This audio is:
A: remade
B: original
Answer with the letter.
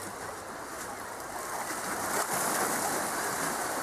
B